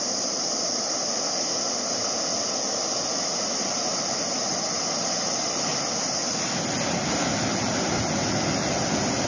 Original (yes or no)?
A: yes